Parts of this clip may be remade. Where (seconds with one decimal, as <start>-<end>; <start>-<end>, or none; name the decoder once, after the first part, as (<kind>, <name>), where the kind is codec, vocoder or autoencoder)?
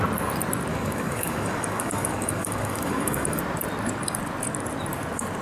0.7-3.4 (codec, DAC)